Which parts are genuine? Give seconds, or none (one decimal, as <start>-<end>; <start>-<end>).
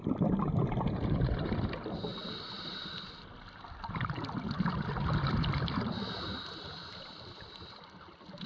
0.0-8.5